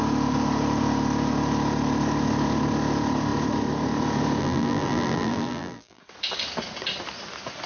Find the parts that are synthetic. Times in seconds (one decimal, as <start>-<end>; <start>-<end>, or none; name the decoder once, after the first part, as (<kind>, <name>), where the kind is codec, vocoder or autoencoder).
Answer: 4.4-6.0 (vocoder, BigVGAN v2)